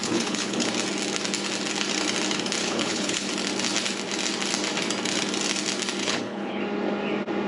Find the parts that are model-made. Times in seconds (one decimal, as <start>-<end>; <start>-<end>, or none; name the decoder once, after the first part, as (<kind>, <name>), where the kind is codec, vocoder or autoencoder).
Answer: 0.0-0.7 (codec, HILCodec); 2.6-3.3; 6.0-6.6